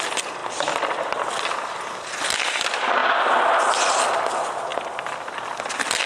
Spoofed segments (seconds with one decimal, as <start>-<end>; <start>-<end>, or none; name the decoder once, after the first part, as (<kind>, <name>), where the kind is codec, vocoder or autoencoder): none